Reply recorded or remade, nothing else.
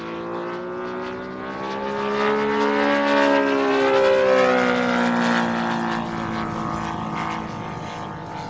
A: recorded